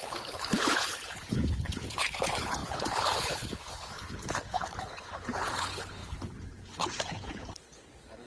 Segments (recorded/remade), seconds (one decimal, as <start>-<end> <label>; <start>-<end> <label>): 0.0-8.3 remade